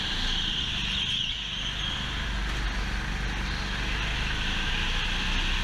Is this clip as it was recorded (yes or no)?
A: yes